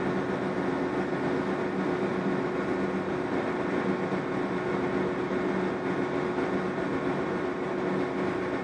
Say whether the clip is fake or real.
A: real